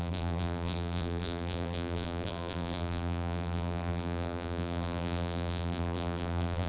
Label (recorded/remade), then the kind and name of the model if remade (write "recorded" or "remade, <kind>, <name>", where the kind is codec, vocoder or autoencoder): remade, vocoder, BigVGAN v2